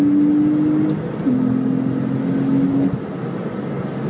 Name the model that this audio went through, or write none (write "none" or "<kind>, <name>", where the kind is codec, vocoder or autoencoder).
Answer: none